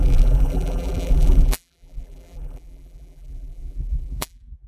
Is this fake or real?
fake